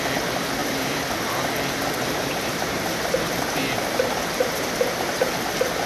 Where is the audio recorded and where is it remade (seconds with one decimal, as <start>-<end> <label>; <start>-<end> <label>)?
0.0-0.6 recorded; 0.6-1.3 remade; 1.3-2.2 recorded; 2.2-5.3 remade; 5.3-5.9 recorded